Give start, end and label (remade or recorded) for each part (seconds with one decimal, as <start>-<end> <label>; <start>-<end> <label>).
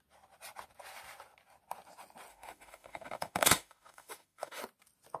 0.0-2.3 recorded; 2.3-4.6 remade; 4.6-5.2 recorded